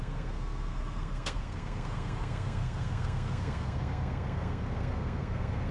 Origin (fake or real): fake